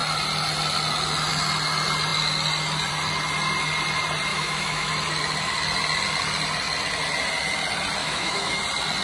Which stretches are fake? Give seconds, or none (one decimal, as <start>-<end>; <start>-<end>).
4.3-4.9; 8.0-8.6